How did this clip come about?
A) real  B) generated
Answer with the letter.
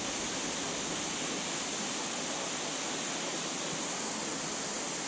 A